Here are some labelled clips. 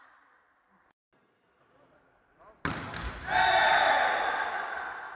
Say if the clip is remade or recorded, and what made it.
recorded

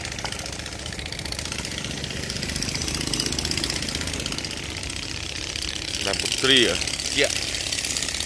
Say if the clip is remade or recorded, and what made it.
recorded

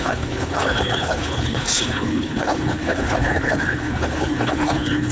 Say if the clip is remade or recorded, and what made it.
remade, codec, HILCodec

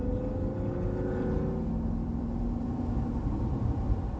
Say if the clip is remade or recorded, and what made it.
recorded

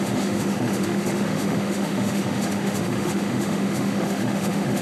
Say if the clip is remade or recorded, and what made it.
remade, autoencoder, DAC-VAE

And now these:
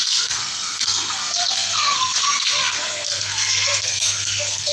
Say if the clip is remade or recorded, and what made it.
remade, codec, SNAC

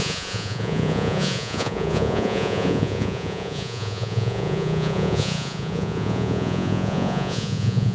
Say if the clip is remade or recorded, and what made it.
remade, vocoder, Vocos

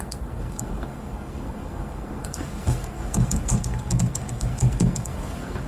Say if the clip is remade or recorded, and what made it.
remade, codec, SNAC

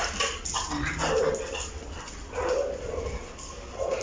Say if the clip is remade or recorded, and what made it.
recorded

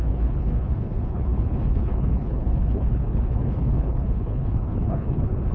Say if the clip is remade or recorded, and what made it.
remade, codec, HILCodec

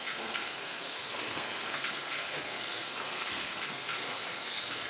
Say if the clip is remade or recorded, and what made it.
remade, codec, SNAC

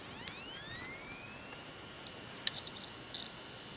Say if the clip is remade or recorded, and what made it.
recorded